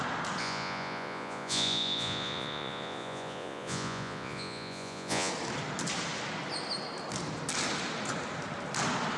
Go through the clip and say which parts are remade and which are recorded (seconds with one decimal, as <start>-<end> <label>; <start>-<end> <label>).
0.0-0.4 recorded; 0.4-5.3 remade; 5.3-9.2 recorded

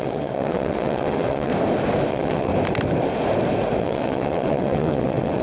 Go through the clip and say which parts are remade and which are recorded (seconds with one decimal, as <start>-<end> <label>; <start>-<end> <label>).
0.0-1.5 remade; 1.5-2.1 recorded; 2.1-2.5 remade; 2.5-3.8 recorded; 3.8-5.4 remade